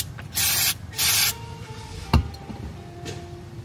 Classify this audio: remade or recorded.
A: remade